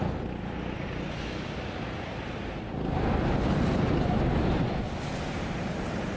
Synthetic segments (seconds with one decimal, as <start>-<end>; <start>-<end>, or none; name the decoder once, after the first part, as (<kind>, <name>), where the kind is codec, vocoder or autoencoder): none